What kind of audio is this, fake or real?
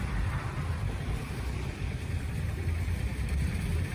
fake